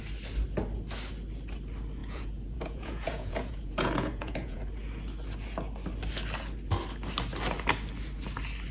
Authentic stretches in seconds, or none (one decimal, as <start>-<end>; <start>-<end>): 0.0-2.0; 4.7-8.7